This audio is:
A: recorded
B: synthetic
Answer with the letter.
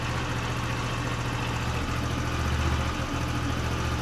A